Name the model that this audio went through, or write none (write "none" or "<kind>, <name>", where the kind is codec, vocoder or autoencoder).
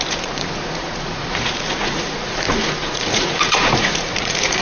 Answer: vocoder, Vocos